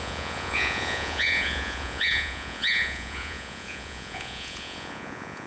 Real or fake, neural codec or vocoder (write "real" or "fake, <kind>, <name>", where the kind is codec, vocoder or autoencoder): fake, vocoder, Vocos